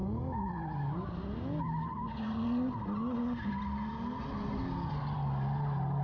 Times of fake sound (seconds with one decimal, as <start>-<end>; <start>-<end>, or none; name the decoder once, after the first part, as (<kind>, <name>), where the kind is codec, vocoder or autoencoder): none